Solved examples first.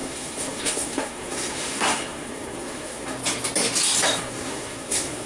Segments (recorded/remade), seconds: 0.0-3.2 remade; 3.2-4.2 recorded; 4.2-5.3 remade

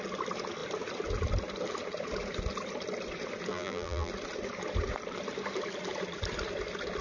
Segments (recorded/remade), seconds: 0.0-3.5 recorded; 3.5-4.1 remade; 4.1-7.0 recorded

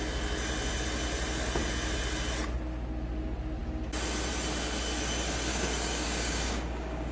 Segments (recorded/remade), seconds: 0.0-5.5 recorded; 5.5-7.1 remade